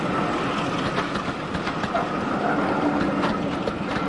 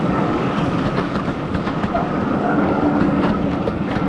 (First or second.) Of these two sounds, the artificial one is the second